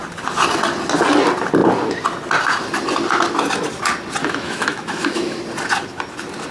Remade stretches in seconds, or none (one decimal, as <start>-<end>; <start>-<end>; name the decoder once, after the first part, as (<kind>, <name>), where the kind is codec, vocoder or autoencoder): 4.2-5.4 (autoencoder, DAC-VAE)